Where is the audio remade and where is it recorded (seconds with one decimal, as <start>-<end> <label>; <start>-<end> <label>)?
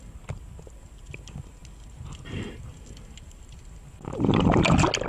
0.0-5.1 recorded